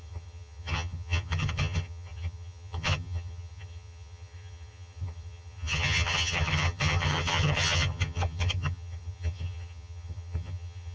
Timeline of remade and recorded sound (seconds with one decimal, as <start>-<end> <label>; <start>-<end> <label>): 0.0-10.9 remade